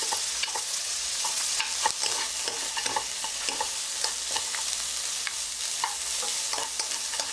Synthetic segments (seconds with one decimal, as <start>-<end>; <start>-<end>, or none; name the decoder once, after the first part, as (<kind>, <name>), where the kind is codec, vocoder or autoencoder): 0.0-1.6 (vocoder, WaveNeXt)